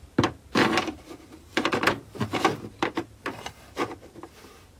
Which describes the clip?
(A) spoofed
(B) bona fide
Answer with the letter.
A